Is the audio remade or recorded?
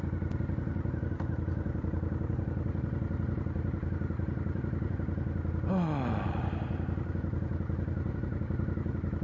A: recorded